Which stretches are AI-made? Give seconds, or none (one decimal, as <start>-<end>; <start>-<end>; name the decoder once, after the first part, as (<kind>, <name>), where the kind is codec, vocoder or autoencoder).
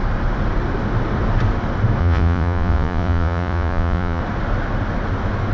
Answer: 2.0-4.2 (vocoder, Vocos)